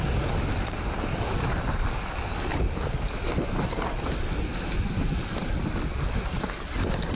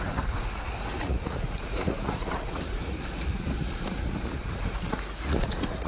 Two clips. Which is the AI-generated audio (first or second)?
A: second